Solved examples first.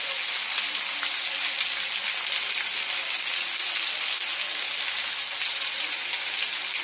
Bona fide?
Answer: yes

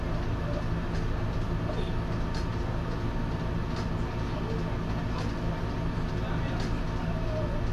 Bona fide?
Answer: yes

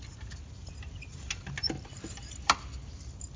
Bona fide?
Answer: yes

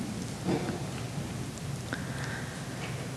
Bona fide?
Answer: yes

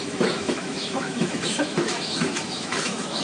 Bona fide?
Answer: no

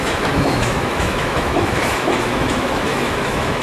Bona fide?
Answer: no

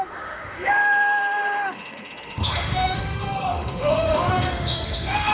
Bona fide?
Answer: no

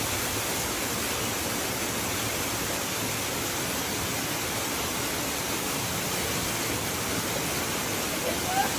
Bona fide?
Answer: yes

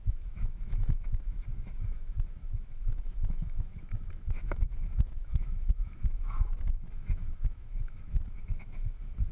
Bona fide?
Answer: no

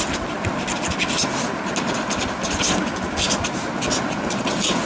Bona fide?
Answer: yes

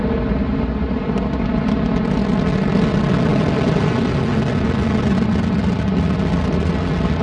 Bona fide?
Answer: yes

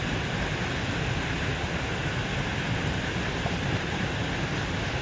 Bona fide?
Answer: yes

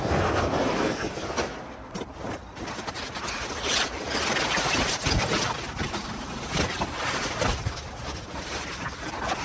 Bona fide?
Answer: yes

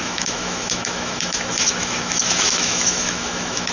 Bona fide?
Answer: no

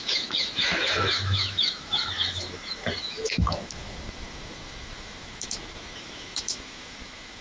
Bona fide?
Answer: no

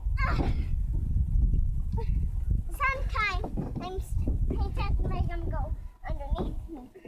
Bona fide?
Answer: yes